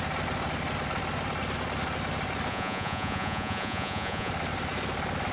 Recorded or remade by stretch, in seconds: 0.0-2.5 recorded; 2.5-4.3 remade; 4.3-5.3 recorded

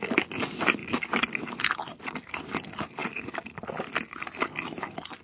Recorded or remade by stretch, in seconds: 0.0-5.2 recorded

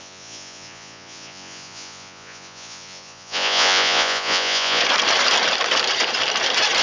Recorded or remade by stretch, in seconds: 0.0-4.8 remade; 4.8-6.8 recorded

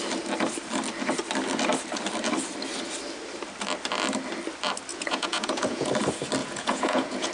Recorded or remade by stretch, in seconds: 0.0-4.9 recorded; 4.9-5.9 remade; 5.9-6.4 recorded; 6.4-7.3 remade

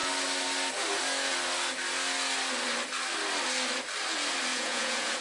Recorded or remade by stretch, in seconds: 0.0-4.5 recorded; 4.5-5.2 remade